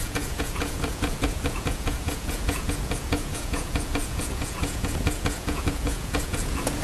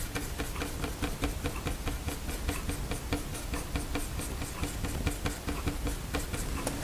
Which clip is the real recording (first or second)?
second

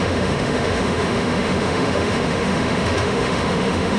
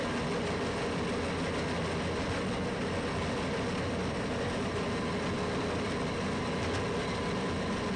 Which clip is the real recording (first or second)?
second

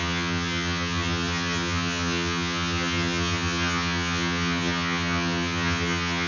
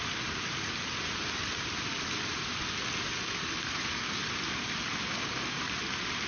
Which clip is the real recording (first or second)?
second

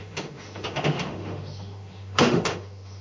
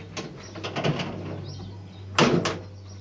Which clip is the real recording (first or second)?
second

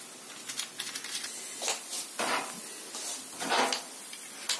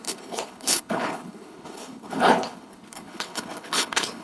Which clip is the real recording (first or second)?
first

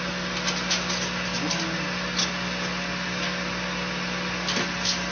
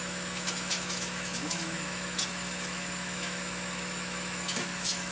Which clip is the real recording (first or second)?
first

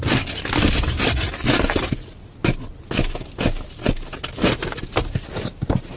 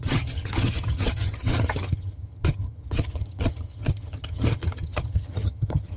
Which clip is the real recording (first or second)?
first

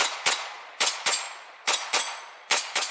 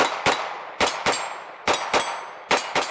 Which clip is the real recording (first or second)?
second